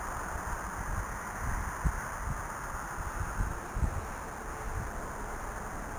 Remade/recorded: recorded